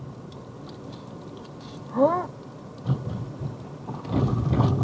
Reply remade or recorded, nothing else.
recorded